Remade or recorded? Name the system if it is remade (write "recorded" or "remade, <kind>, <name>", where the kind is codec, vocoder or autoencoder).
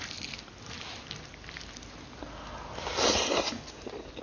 recorded